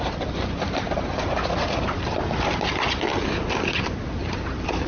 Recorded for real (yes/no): yes